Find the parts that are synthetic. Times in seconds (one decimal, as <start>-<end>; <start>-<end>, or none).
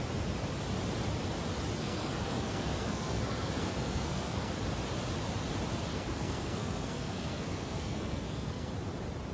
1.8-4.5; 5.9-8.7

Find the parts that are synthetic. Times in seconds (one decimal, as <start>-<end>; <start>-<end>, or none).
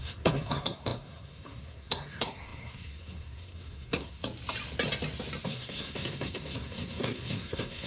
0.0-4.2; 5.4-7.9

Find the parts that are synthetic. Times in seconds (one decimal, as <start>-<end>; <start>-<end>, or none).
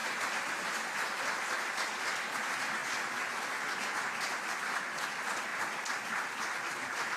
none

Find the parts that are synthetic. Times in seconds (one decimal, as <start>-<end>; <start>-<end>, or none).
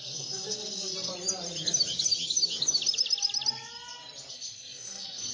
0.0-1.1; 4.3-5.3